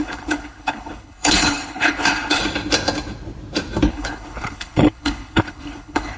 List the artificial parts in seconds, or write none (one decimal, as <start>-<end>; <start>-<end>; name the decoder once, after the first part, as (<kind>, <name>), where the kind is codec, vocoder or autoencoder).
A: 0.0-2.4 (codec, HILCodec); 3.9-6.2